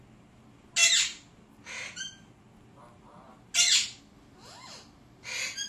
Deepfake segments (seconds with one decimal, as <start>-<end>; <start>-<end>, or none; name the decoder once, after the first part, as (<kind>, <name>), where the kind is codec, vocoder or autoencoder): none